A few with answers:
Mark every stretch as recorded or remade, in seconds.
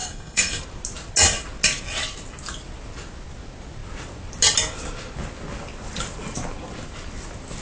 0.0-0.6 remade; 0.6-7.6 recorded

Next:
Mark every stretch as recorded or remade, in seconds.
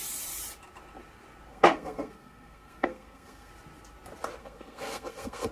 0.0-1.5 recorded; 1.5-3.5 remade; 3.5-4.4 recorded; 4.4-5.5 remade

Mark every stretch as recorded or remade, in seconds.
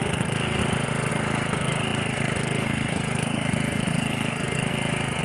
0.0-0.6 remade; 0.6-1.1 recorded; 1.1-5.2 remade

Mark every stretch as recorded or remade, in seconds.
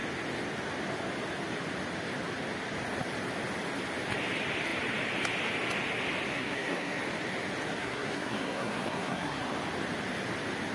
0.0-6.3 recorded; 6.3-7.0 remade; 7.0-7.8 recorded; 7.8-9.4 remade; 9.4-10.7 recorded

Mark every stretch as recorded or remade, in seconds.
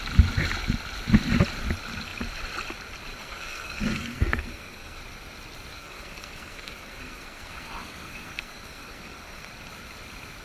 0.0-3.1 recorded; 3.1-5.0 remade; 5.0-5.7 recorded; 5.7-9.5 remade; 9.5-10.4 recorded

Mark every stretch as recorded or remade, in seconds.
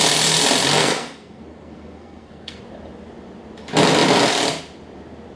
0.0-0.8 recorded; 0.8-2.6 remade; 2.6-5.4 recorded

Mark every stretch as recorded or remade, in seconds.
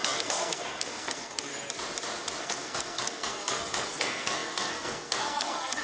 0.0-1.5 remade; 1.5-2.4 recorded; 2.4-5.8 remade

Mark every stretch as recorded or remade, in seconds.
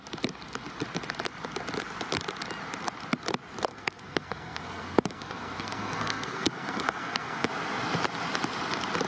0.0-3.7 recorded; 3.7-7.5 remade; 7.5-9.1 recorded